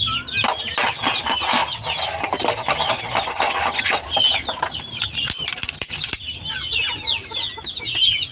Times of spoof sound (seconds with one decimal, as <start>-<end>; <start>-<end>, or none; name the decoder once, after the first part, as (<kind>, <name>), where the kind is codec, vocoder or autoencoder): none